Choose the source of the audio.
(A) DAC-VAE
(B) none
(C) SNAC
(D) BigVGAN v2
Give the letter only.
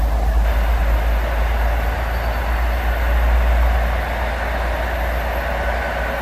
B